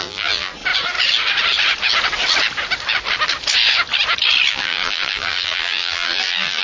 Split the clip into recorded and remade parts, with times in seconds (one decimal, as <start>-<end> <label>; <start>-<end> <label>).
0.0-0.5 remade; 0.5-4.5 recorded; 4.5-6.6 remade